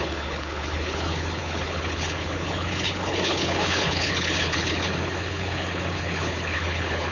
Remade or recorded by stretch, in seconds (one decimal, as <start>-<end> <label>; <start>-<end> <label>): 0.0-7.1 remade